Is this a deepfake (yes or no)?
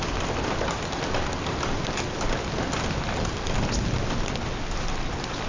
no